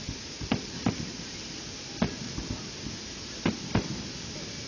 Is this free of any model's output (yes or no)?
yes